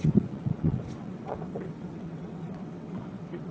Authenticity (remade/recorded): remade